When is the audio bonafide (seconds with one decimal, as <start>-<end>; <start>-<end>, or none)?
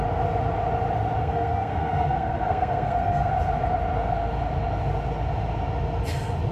0.0-1.2; 3.3-6.5